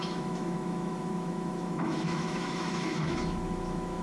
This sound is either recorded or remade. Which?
remade